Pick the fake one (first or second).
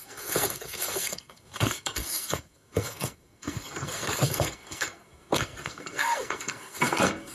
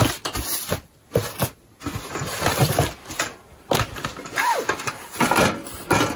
first